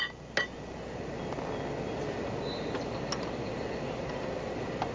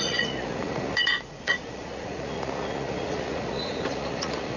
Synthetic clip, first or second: second